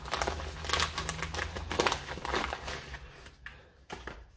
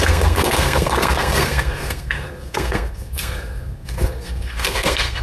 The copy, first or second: second